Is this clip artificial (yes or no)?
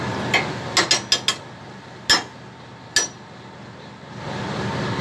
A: no